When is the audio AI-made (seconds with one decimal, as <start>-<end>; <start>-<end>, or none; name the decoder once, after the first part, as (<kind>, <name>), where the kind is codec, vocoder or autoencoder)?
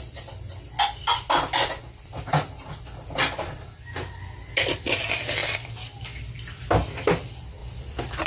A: none